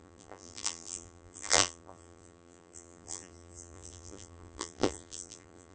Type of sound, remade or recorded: remade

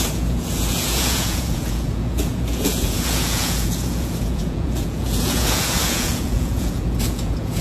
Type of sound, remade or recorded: remade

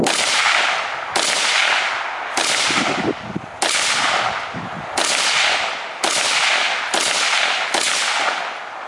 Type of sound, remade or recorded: recorded